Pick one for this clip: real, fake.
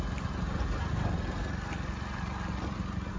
real